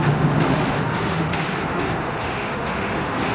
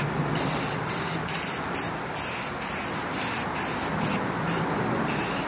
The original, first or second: second